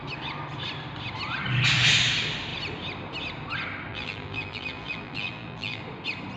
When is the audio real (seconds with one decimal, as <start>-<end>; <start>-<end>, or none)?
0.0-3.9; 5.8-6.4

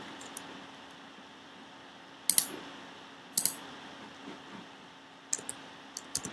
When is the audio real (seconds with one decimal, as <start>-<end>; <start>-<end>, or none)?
0.0-6.3

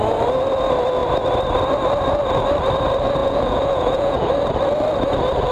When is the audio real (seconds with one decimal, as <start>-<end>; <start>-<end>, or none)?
0.0-3.2; 4.3-5.5

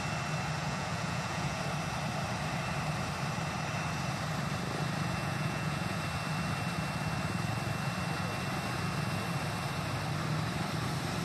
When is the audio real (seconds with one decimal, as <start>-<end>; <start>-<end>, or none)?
0.0-0.6; 1.6-5.2; 6.0-11.2